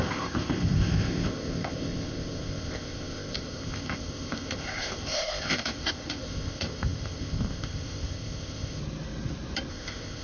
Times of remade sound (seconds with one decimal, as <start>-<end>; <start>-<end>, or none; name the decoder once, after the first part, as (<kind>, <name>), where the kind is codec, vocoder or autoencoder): 0.0-8.8 (codec, ZipCodec); 9.7-10.2